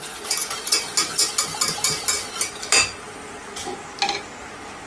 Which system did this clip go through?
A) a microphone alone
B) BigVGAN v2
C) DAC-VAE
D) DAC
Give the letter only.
A